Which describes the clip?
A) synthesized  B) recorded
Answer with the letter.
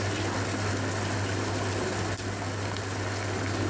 B